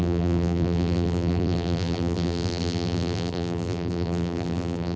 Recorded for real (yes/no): no